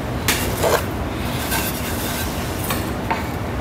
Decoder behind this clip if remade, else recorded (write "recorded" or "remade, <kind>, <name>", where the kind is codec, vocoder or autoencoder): recorded